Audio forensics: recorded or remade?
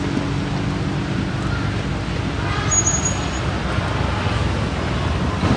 recorded